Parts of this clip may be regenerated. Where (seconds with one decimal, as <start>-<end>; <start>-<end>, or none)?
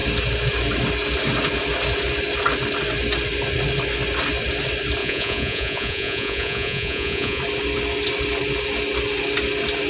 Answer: 5.0-7.4